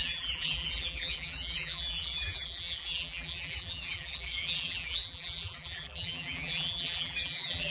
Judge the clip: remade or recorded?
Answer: remade